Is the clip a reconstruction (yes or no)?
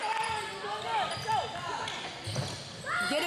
no